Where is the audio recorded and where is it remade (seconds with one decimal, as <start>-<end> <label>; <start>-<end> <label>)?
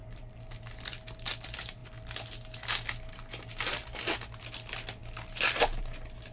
0.0-6.3 recorded